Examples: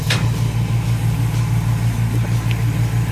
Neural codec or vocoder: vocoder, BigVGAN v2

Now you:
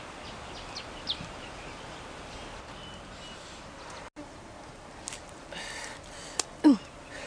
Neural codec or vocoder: none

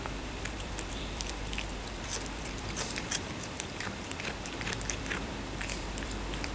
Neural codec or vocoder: vocoder, BigVGAN v2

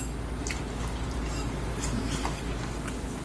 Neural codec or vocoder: none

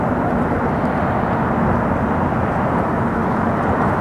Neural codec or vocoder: vocoder, BigVGAN v2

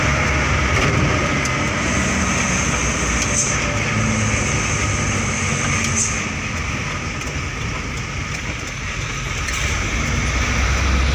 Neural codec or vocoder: none